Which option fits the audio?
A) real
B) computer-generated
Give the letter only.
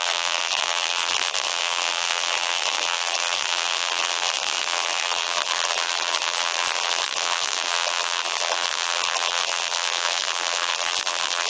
B